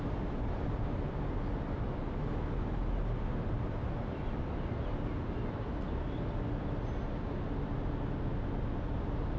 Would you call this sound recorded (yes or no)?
yes